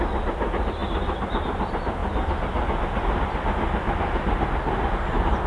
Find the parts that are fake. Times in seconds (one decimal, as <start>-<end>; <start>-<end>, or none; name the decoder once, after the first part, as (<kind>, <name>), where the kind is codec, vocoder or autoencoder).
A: none